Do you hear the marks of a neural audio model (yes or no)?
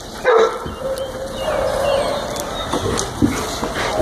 no